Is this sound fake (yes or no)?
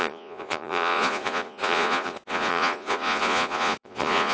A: yes